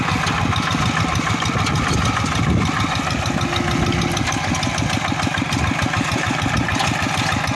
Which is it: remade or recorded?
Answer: recorded